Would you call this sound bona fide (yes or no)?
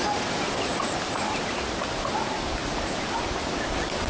yes